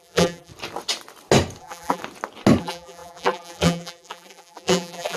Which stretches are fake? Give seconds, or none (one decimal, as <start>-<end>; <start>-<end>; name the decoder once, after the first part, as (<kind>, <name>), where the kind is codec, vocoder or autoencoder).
0.0-0.5 (vocoder, BigVGAN v2); 1.6-2.0; 2.6-5.2